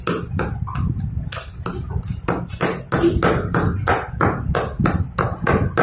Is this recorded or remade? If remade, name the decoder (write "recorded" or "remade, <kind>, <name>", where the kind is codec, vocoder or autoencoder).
recorded